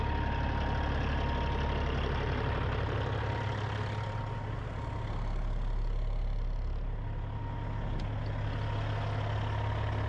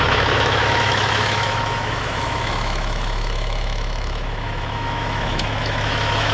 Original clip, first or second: first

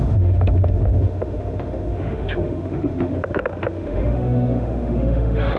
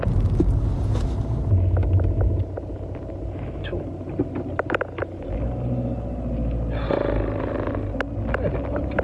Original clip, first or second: second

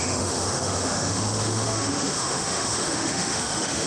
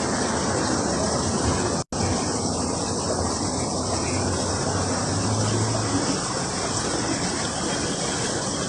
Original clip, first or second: second